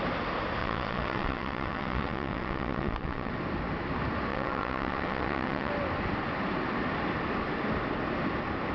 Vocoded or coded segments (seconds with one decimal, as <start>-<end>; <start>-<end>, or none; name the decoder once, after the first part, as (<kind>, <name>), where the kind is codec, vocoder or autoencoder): 0.6-3.3 (vocoder, WaveNeXt); 4.3-5.7